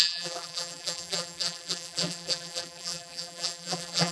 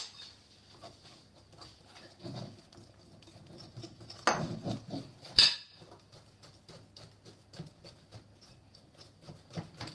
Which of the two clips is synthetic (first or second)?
first